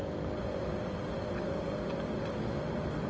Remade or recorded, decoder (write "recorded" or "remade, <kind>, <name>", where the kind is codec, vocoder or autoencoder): recorded